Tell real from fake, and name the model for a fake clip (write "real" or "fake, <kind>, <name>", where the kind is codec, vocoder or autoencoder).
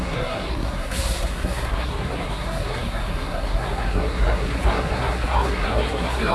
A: fake, codec, SNAC